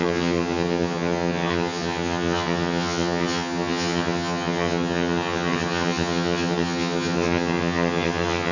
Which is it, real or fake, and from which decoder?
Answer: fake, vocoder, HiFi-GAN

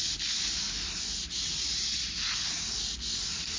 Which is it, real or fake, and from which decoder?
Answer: real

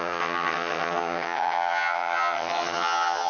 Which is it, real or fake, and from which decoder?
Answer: fake, vocoder, HiFi-GAN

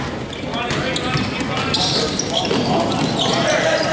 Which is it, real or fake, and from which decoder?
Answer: real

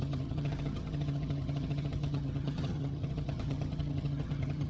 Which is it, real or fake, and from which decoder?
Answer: fake, vocoder, HiFi-GAN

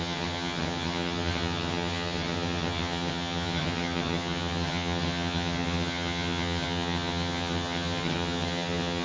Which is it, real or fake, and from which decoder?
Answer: fake, vocoder, HiFi-GAN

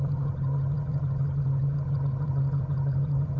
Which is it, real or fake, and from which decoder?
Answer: fake, vocoder, HiFi-GAN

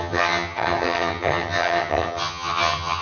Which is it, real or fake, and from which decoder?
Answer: fake, vocoder, HiFi-GAN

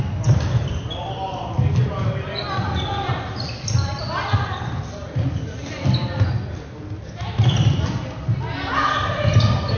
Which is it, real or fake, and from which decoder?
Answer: real